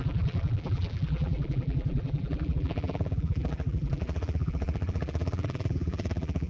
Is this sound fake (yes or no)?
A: yes